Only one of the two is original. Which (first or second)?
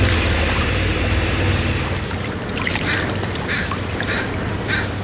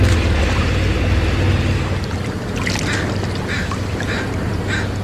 second